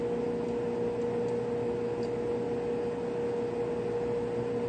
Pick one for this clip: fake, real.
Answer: real